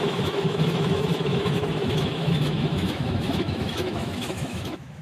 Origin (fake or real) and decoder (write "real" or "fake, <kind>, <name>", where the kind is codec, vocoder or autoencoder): fake, autoencoder, DAC-VAE